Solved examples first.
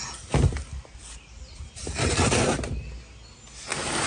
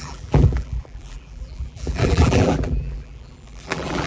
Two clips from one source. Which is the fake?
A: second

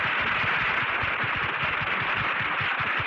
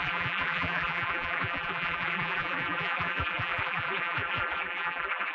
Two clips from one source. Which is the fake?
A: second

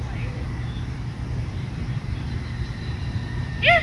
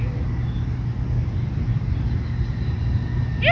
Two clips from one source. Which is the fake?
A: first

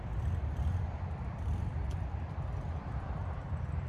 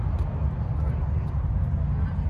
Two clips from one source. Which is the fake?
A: first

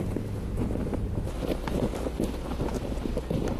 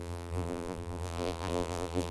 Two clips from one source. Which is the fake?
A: second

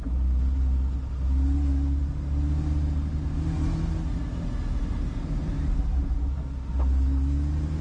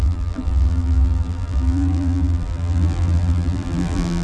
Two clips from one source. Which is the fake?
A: second